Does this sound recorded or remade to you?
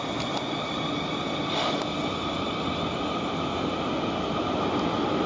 recorded